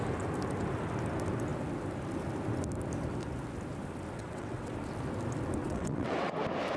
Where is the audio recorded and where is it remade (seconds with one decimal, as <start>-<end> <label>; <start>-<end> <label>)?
0.0-4.2 recorded; 4.2-4.7 remade; 4.7-5.6 recorded; 5.6-6.3 remade; 6.3-6.8 recorded